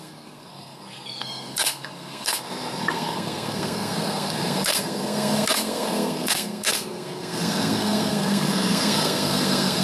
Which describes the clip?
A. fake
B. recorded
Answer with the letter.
A